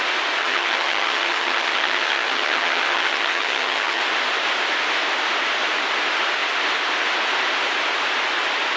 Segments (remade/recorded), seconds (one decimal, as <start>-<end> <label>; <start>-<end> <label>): 0.0-0.4 recorded; 0.4-4.0 remade; 4.0-8.8 recorded